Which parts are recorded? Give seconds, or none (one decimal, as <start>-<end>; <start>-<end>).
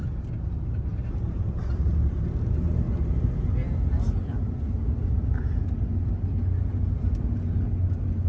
0.0-0.9; 1.9-8.3